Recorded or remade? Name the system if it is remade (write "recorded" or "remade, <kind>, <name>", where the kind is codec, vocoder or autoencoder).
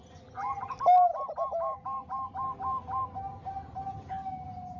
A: recorded